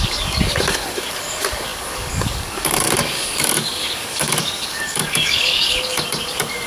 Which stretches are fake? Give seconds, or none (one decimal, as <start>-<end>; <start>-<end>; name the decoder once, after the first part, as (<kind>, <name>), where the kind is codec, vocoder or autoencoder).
0.0-6.7 (codec, DAC)